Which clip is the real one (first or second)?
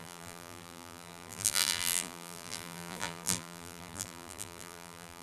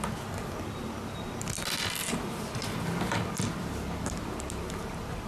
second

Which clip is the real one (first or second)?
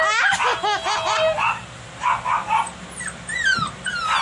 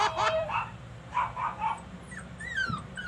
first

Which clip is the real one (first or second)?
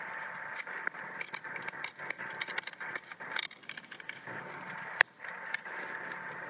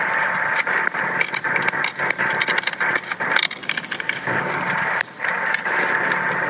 second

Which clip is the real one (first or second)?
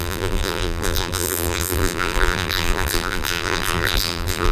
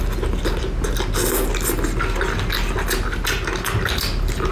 second